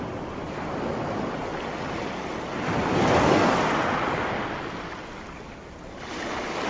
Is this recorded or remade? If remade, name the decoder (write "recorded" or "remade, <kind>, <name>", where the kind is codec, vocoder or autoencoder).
recorded